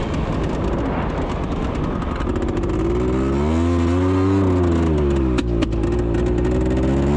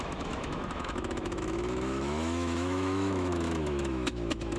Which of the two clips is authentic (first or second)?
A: first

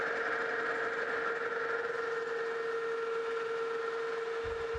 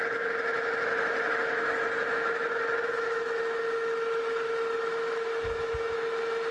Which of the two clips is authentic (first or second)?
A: first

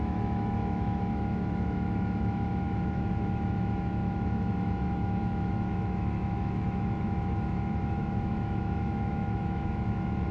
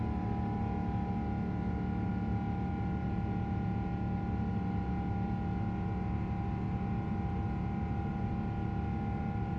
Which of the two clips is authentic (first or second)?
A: second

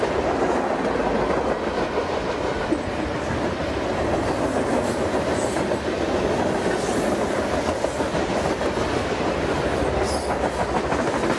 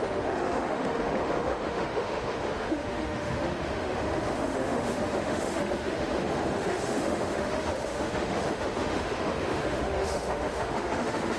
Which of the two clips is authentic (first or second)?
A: first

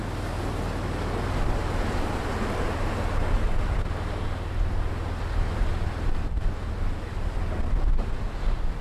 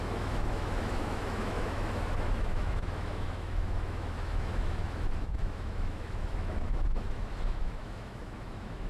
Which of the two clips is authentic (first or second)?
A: first